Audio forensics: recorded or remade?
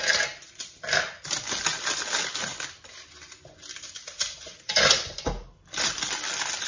recorded